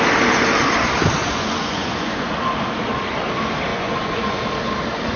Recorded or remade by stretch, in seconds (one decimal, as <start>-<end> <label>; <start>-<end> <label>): 0.0-1.2 recorded; 1.2-2.3 remade; 2.3-3.7 recorded; 3.7-4.4 remade; 4.4-5.2 recorded